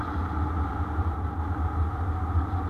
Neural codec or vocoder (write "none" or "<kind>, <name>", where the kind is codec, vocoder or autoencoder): none